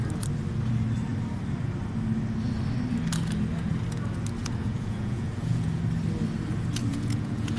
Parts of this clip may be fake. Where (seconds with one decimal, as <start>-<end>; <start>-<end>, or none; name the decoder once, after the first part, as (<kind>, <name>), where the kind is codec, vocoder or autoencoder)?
4.4-5.8 (vocoder, Vocos); 6.9-7.6